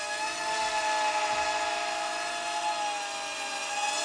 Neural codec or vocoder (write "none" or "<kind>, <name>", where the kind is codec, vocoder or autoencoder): none